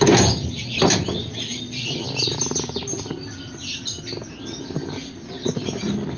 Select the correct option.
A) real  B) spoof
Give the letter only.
A